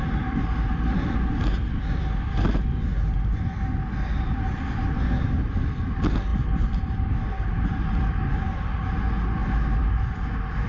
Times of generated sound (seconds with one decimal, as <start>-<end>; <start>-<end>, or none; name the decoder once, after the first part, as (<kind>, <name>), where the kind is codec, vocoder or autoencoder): none

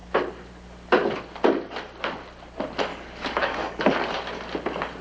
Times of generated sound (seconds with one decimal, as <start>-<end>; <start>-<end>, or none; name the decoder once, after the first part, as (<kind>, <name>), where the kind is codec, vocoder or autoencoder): 2.9-3.8 (codec, DAC)